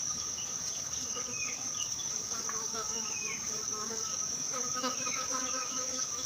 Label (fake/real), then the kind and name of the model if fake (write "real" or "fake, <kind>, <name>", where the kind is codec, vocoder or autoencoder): fake, codec, DAC